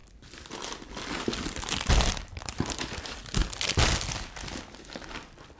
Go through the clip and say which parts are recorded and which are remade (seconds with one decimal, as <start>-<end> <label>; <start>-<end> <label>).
0.0-3.4 remade; 3.4-5.0 recorded; 5.0-5.6 remade